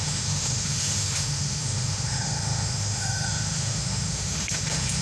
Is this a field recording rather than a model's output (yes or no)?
no